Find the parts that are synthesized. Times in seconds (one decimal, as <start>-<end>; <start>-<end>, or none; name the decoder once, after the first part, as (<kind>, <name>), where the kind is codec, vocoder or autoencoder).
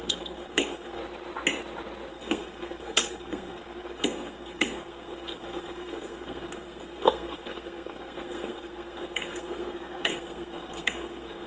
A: 0.0-1.0 (codec, SNAC); 2.1-11.5